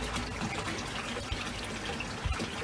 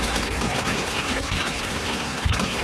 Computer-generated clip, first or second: second